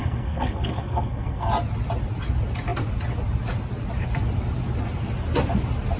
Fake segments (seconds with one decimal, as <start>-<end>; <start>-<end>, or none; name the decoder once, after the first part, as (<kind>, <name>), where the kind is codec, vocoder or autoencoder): 0.0-1.5 (codec, SNAC)